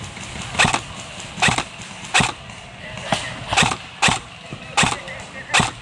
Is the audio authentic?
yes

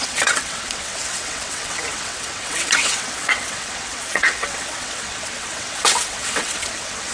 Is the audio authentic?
no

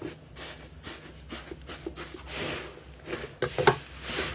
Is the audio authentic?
yes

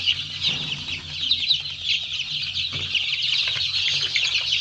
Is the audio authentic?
yes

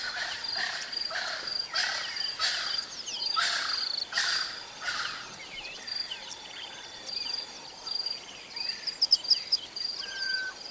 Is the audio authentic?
yes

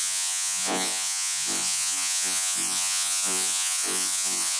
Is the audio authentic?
no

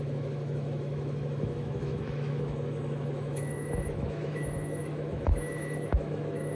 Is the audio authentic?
no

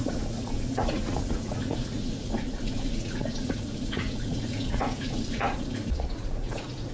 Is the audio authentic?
no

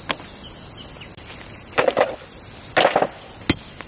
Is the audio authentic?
yes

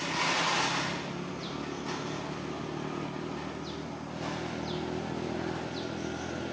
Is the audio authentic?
yes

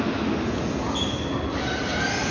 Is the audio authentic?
yes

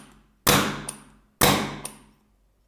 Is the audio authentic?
yes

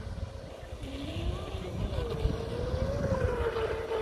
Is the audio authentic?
yes